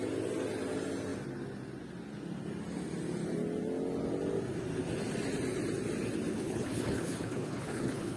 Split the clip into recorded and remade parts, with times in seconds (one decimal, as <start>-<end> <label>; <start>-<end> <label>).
0.0-6.3 recorded; 6.3-8.2 remade